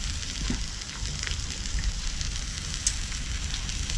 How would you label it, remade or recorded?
recorded